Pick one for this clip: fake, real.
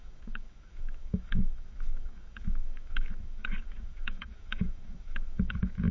fake